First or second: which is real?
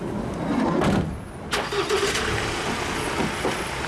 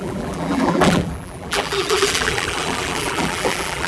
first